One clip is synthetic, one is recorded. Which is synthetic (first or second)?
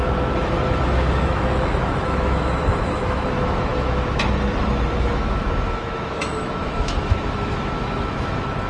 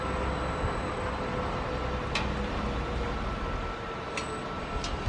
first